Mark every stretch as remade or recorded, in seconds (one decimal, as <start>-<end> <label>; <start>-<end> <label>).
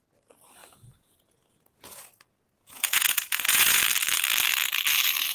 0.0-0.6 recorded; 0.6-3.8 remade; 3.8-5.3 recorded